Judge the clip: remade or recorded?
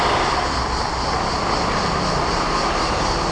recorded